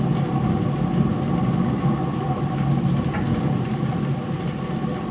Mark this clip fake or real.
real